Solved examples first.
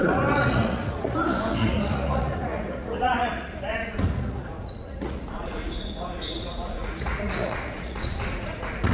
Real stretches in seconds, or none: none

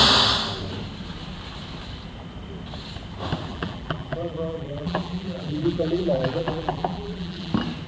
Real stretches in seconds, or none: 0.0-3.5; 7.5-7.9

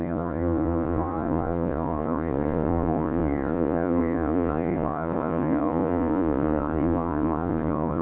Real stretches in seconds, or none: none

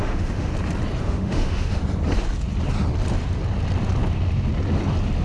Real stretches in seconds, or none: 0.5-1.0; 1.8-5.2